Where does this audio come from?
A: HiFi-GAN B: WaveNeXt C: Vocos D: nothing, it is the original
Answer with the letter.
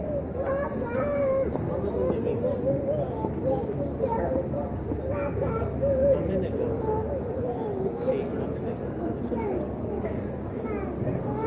D